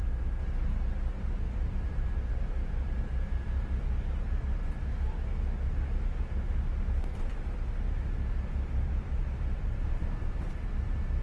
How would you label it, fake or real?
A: real